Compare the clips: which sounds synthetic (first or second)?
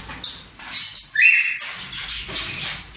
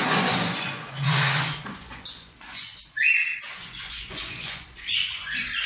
second